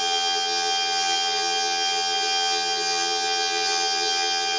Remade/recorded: remade